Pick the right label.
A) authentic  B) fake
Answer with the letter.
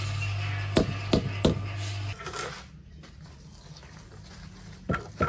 A